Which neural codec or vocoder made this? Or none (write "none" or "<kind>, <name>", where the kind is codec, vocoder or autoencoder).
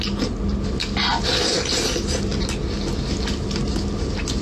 none